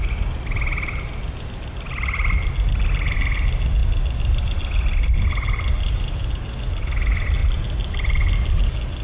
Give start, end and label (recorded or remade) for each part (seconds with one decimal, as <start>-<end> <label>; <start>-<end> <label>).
0.0-9.0 recorded